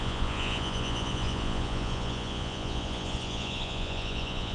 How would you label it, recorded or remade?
remade